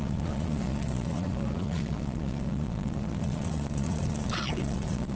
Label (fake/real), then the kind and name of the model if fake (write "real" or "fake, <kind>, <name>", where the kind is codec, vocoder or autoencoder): fake, vocoder, Vocos